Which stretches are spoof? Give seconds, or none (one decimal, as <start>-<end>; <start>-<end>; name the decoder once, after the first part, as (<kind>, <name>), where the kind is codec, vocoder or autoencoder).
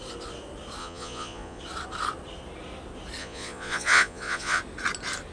0.8-1.6 (vocoder, Vocos); 3.2-4.6